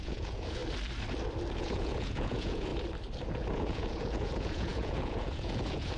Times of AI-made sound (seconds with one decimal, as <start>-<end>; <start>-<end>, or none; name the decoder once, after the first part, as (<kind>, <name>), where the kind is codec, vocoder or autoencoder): 0.0-0.6 (vocoder, Vocos); 1.6-2.7; 3.3-6.0